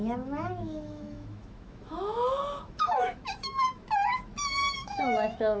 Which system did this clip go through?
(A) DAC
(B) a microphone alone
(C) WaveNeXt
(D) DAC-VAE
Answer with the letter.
D